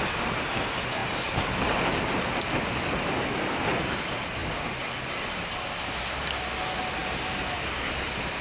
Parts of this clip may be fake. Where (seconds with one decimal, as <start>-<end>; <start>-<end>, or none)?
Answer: none